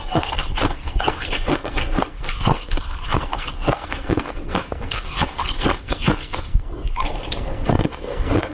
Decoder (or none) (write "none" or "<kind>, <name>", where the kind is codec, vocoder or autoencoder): codec, SNAC